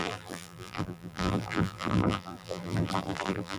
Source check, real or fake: fake